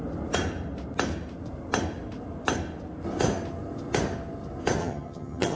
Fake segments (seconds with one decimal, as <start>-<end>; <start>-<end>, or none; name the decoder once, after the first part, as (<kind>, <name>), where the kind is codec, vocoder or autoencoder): 4.8-5.6 (vocoder, HiFi-GAN)